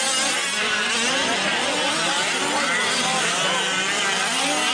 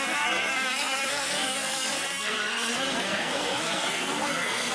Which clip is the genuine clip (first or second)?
first